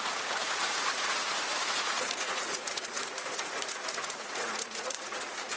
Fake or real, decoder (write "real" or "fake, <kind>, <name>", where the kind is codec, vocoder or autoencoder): fake, vocoder, Vocos